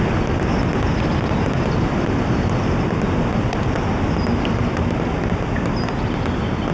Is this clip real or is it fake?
real